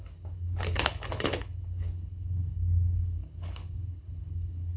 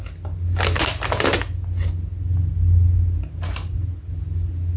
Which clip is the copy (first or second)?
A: first